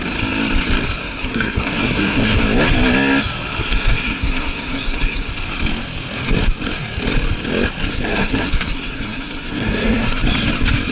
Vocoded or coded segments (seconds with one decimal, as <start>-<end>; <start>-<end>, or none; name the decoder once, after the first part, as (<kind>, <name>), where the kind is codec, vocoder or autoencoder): 1.0-2.4 (codec, SNAC); 3.6-5.3; 7.9-10.2